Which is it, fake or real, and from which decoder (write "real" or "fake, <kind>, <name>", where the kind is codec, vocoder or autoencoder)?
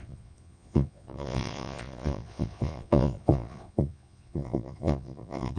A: fake, vocoder, Vocos